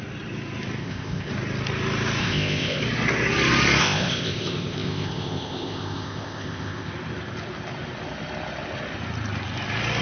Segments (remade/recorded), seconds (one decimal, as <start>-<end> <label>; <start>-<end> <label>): 0.0-0.8 recorded; 0.8-1.3 remade; 1.3-2.2 recorded; 2.2-2.8 remade; 2.8-3.8 recorded; 3.8-6.9 remade; 6.9-10.0 recorded

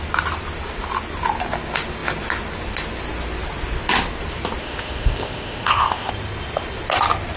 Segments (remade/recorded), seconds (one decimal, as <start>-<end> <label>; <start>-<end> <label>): 0.0-4.6 recorded; 4.6-6.1 remade; 6.1-7.4 recorded

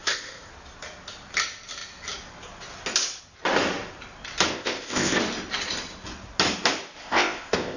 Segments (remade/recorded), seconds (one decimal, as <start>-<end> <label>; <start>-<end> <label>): 0.0-0.5 remade; 0.5-4.5 recorded; 4.5-5.2 remade; 5.2-7.0 recorded; 7.0-7.8 remade

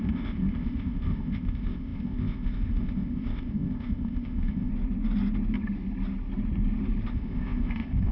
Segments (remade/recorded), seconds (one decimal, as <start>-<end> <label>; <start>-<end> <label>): 0.0-4.7 remade; 4.7-7.1 recorded; 7.1-8.1 remade

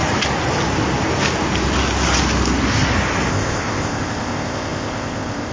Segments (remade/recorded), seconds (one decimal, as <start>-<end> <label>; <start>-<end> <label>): 0.0-3.3 recorded; 3.3-5.5 remade